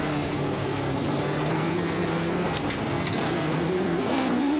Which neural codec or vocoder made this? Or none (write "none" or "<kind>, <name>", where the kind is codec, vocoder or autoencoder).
codec, SNAC